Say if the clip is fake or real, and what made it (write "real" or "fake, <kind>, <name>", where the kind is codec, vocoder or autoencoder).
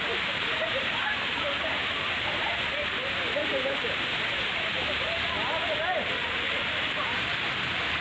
fake, vocoder, BigVGAN v2